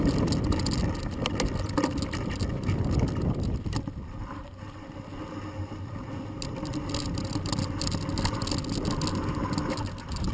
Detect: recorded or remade recorded